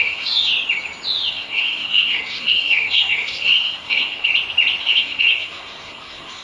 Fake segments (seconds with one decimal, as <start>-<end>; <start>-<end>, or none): 0.0-0.5; 1.3-4.3; 4.8-6.4